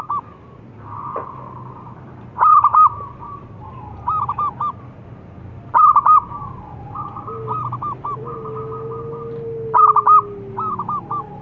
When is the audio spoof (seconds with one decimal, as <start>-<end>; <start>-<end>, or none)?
2.5-3.7; 5.9-6.8

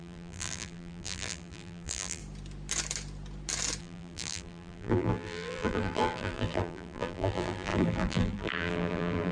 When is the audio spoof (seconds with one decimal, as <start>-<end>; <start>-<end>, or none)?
0.0-2.2; 3.8-9.3

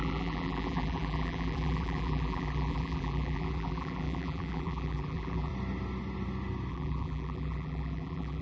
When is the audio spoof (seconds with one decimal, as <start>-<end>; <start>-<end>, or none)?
0.0-5.5; 6.7-8.4

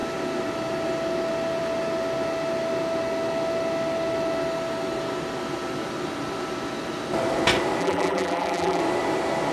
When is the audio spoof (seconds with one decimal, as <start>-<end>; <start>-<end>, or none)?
7.8-8.8

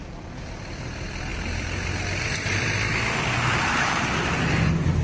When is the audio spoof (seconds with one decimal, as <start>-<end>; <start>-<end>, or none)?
1.3-4.3

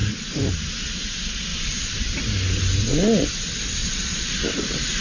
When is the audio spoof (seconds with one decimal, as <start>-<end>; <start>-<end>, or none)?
1.5-2.2; 3.8-5.0

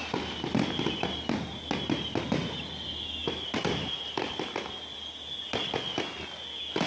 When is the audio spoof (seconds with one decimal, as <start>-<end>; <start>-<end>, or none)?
none

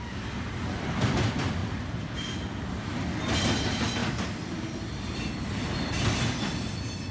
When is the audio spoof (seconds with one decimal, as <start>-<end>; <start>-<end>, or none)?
4.0-5.3